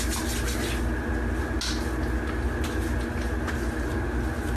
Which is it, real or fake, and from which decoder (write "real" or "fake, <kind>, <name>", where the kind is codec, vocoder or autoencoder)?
real